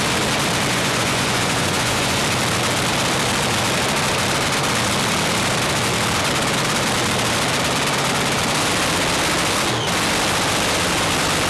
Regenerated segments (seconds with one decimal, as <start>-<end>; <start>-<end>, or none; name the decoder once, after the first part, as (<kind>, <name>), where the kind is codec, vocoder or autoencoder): 0.7-2.2 (vocoder, Vocos)